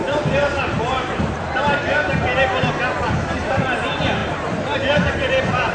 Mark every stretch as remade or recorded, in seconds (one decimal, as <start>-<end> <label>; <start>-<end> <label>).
0.0-1.8 remade; 1.8-3.0 recorded; 3.0-5.7 remade